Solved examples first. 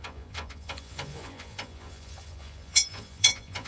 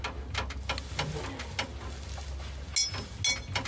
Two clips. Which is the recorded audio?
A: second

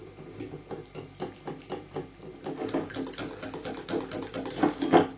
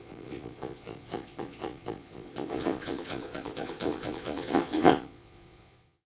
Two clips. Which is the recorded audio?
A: first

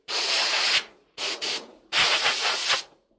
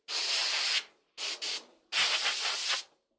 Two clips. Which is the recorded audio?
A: second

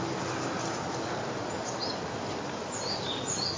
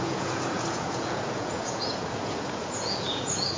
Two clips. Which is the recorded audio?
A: first